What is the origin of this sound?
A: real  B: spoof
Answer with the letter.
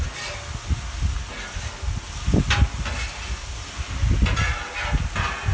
A